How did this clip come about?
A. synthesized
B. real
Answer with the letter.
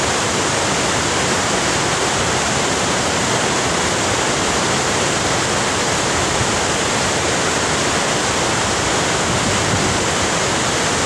B